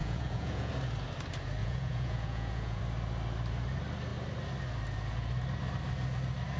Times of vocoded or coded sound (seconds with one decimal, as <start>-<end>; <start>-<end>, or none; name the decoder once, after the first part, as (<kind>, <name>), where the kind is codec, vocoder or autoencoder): 0.0-0.7 (vocoder, Vocos); 1.6-2.8